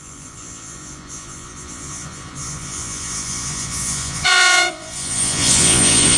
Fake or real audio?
fake